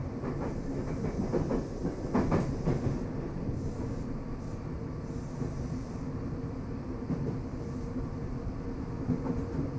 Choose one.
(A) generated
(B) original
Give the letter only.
B